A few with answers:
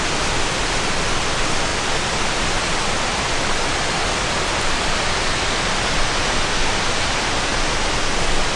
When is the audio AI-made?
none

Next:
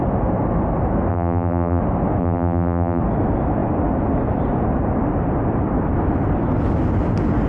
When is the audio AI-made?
1.1-1.8 (vocoder, BigVGAN v2); 2.2-3.0

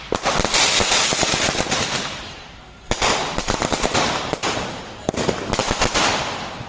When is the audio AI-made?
1.1-5.1 (vocoder, BigVGAN v2)

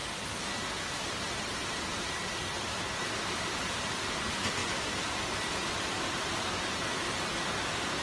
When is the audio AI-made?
1.1-4.6 (vocoder, BigVGAN v2); 6.0-8.0

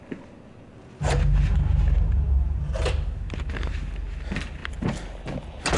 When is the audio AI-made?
none

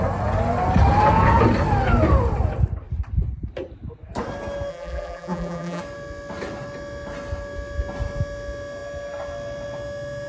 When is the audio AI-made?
4.7-5.8 (vocoder, BigVGAN v2)

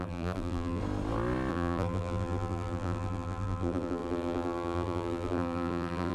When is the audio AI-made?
0.0-0.8 (vocoder, BigVGAN v2); 1.5-6.1